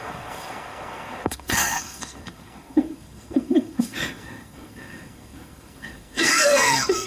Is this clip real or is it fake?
fake